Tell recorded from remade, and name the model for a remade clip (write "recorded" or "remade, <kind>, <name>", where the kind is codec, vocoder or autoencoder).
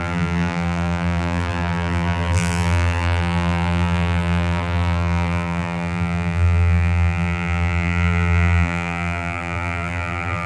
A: remade, vocoder, BigVGAN v2